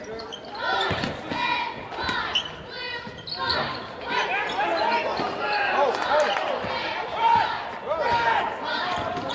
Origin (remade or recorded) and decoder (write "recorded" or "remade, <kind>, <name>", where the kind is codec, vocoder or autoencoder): recorded